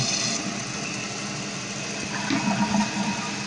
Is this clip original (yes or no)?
yes